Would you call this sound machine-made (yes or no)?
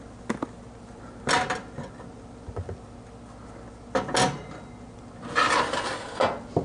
no